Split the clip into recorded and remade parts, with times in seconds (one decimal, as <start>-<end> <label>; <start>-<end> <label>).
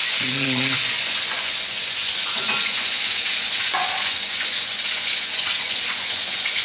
0.0-6.6 remade